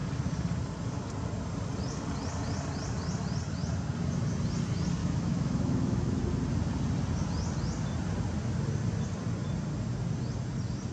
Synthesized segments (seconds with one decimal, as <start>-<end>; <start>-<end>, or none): 5.0-6.2